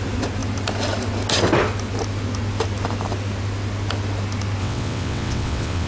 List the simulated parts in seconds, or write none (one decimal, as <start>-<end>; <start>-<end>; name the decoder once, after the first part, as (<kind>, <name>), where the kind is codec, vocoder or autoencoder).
4.6-5.9 (vocoder, WaveNeXt)